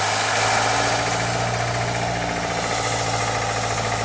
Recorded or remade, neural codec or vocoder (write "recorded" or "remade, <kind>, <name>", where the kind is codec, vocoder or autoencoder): recorded